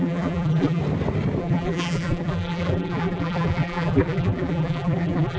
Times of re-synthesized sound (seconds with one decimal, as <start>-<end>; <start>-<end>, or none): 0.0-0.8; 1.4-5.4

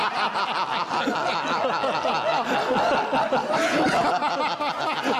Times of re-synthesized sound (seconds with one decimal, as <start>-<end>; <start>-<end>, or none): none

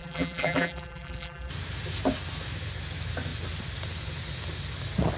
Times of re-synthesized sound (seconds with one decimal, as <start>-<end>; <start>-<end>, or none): 0.0-1.5